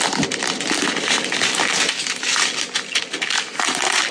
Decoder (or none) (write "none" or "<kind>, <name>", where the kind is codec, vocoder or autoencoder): none